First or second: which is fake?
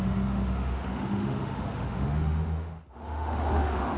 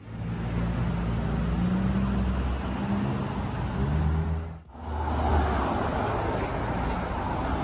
first